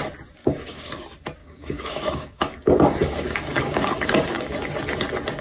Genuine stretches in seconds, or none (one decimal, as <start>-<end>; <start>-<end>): 0.0-0.4; 0.9-1.4; 4.6-5.4